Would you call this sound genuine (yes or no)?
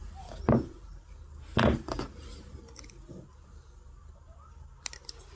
yes